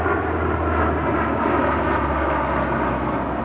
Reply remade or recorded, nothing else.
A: recorded